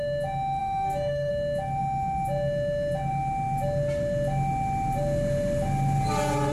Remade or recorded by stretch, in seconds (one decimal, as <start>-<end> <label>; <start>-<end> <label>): 0.0-0.6 recorded; 0.6-1.3 remade; 1.3-6.5 recorded